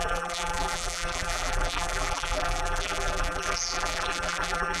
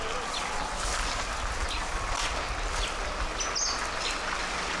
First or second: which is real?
second